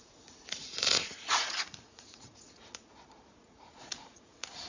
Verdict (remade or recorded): remade